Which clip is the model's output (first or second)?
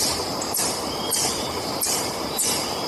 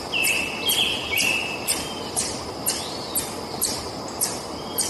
first